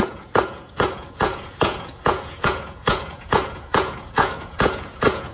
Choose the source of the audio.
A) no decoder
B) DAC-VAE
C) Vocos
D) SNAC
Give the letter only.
C